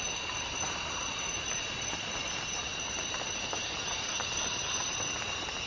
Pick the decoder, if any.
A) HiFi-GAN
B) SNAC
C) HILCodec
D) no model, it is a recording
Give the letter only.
D